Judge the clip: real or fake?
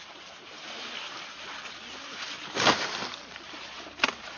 real